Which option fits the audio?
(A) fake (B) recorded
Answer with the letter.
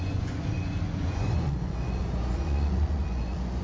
A